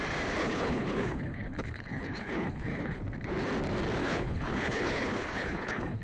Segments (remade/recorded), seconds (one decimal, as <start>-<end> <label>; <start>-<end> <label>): 0.0-0.4 recorded; 0.4-3.0 remade; 3.0-4.0 recorded; 4.0-6.0 remade